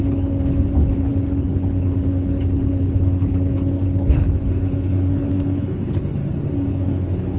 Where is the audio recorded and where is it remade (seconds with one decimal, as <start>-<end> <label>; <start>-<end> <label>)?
0.0-6.2 remade; 6.2-6.7 recorded; 6.7-7.4 remade